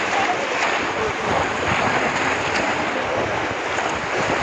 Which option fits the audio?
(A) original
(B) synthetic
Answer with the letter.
A